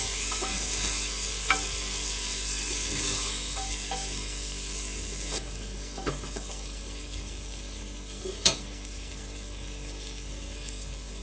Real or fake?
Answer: fake